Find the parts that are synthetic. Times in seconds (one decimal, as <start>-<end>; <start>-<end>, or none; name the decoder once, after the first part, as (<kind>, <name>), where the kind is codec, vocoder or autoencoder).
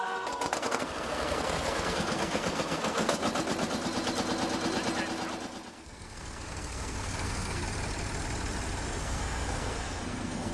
0.0-3.2 (codec, SNAC); 5.7-7.6; 9.0-10.5